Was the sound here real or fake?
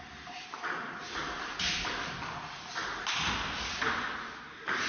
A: real